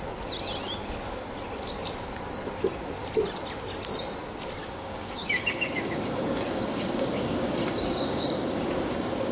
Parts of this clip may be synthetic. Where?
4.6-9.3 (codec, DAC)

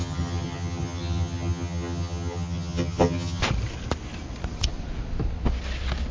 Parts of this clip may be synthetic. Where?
0.0-3.4 (vocoder, HiFi-GAN)

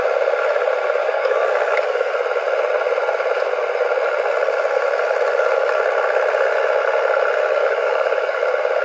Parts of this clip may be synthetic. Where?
1.0-2.1 (codec, DAC); 5.3-5.8; 7.6-8.4

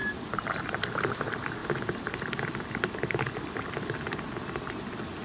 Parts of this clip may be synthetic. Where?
none

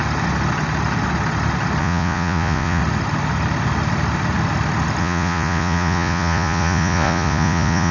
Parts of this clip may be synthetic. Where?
1.8-2.8 (vocoder, Vocos); 5.0-7.9

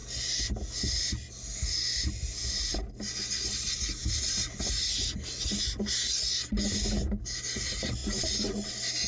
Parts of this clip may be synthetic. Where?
1.5-2.7 (vocoder, BigVGAN v2)

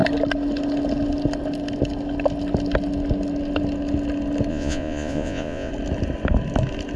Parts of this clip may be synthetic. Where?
4.5-5.7 (vocoder, Vocos)

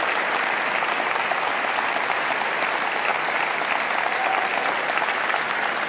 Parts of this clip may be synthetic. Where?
none